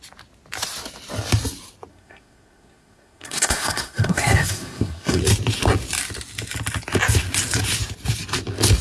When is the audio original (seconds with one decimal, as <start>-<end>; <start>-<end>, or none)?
0.0-1.9; 5.2-8.8